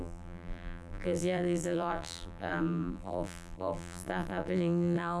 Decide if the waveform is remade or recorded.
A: remade